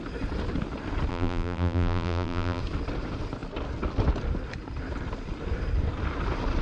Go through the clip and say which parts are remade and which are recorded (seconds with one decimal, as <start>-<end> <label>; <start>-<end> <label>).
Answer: 0.0-1.1 recorded; 1.1-2.6 remade; 2.6-6.6 recorded